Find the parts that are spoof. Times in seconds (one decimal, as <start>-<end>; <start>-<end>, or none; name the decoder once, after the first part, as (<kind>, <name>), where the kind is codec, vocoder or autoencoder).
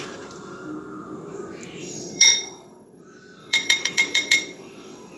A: 1.8-3.0 (vocoder, WaveNeXt); 3.4-5.2